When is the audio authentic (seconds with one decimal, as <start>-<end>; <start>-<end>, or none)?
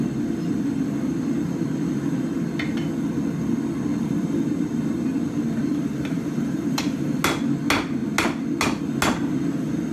0.0-3.9; 4.5-5.7; 7.2-9.9